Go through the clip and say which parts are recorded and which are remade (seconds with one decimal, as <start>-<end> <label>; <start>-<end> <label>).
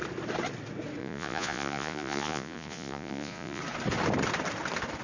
0.0-1.0 recorded; 1.0-3.6 remade; 3.6-5.0 recorded